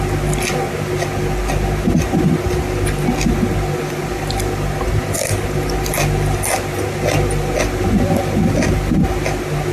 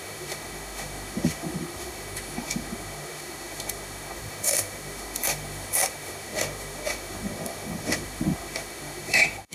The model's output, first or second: second